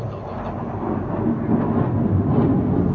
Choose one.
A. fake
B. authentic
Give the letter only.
B